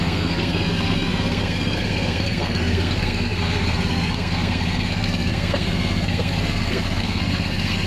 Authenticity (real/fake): fake